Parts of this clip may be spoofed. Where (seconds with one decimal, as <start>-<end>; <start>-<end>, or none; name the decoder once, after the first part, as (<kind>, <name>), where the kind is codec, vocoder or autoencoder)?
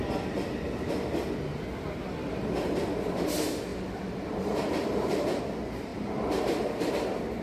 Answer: 2.2-3.0 (vocoder, BigVGAN v2); 3.7-5.4; 5.9-6.9